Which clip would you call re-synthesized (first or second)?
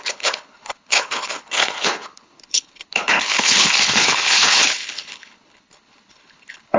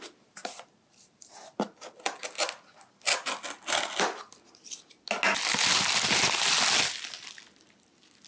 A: first